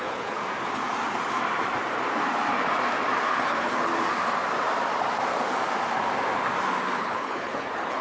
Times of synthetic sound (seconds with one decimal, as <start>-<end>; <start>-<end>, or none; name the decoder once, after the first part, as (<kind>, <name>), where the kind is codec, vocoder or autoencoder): 0.0-0.4 (codec, HILCodec); 3.4-3.9; 7.0-8.0